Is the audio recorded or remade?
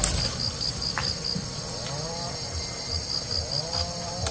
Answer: recorded